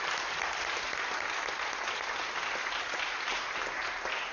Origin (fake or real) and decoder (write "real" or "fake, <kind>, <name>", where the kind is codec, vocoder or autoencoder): real